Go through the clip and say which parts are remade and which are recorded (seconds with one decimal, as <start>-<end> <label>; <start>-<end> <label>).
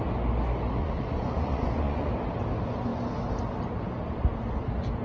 0.0-0.8 recorded; 0.8-2.1 remade; 2.1-5.0 recorded